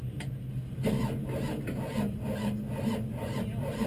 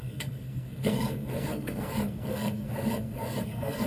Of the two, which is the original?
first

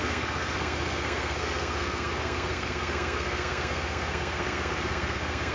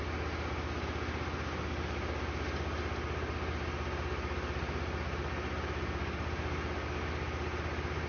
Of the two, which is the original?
second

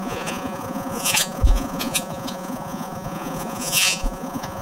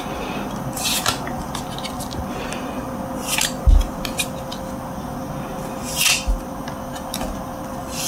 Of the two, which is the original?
second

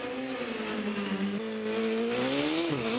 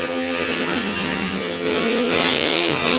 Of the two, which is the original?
first